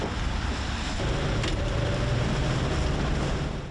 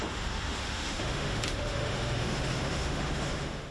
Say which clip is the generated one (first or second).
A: second